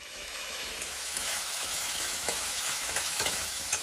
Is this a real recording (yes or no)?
no